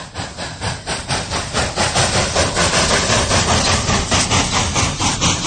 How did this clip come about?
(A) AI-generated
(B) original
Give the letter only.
B